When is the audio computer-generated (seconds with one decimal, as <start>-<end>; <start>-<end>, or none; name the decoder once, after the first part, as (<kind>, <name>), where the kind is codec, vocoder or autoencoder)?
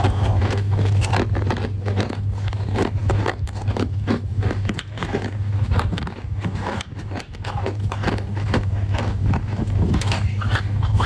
0.0-1.1 (codec, DAC); 1.8-11.1